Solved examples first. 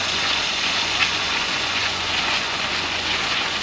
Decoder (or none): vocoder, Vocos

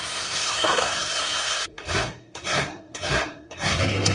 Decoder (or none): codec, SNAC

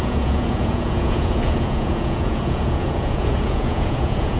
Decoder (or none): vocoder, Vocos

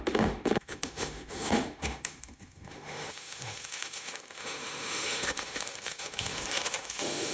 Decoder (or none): autoencoder, DAC-VAE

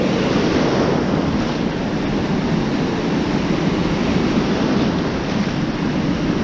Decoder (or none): none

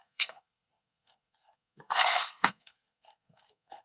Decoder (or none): codec, SNAC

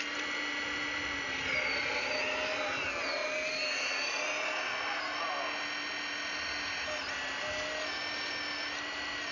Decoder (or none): none